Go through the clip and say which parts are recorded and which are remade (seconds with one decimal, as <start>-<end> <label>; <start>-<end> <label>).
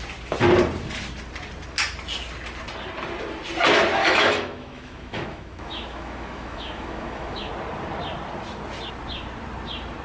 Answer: 0.0-4.0 recorded; 4.0-7.5 remade; 7.5-10.0 recorded